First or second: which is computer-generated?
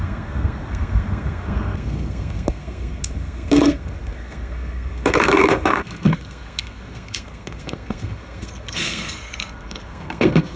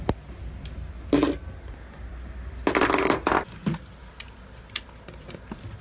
first